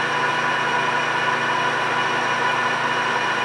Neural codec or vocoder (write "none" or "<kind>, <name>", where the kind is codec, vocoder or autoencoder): none